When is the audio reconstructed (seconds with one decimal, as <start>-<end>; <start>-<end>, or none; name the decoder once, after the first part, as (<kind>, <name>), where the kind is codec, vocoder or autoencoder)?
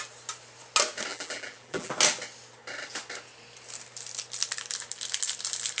1.1-1.9 (vocoder, BigVGAN v2)